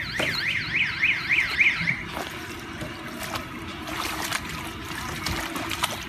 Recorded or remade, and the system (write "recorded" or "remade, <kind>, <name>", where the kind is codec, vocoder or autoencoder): recorded